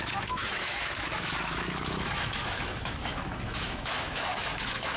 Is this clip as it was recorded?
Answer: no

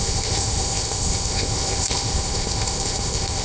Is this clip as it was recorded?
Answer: no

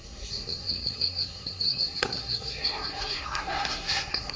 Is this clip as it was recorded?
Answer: no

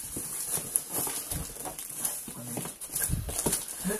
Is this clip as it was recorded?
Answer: yes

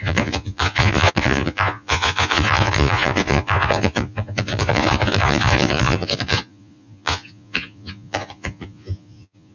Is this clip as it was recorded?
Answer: no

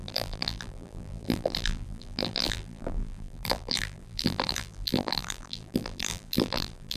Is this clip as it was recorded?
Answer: no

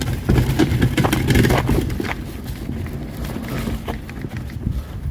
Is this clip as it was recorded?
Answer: yes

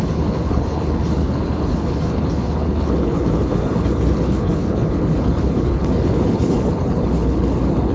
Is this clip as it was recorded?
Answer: no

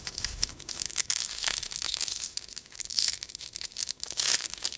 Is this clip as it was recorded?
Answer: no